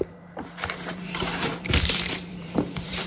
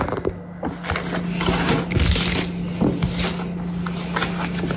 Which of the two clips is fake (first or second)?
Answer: first